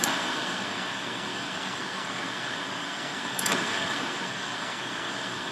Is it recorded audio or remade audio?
remade